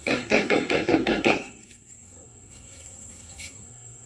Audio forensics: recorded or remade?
remade